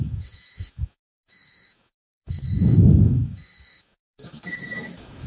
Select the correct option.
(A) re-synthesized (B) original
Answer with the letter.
A